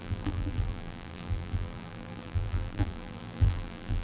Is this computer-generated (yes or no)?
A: yes